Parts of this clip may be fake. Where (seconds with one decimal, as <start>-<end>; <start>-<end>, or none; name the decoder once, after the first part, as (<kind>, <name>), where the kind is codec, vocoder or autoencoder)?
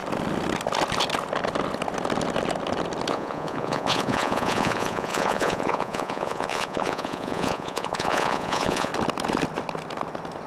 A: 3.1-8.9 (vocoder, Vocos)